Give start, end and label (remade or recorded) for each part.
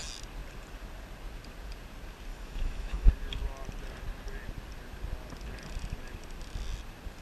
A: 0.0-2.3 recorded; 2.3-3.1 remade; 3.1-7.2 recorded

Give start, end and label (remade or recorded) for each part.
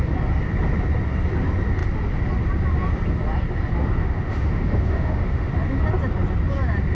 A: 0.0-4.0 recorded; 4.0-5.5 remade; 5.5-6.9 recorded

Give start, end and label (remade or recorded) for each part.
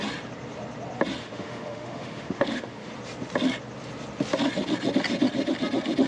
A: 0.0-1.2 recorded; 1.2-2.9 remade; 2.9-6.1 recorded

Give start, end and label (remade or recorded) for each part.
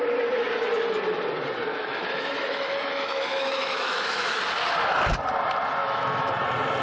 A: 0.0-1.7 recorded; 1.7-4.4 remade; 4.4-5.8 recorded; 5.8-6.3 remade; 6.3-6.8 recorded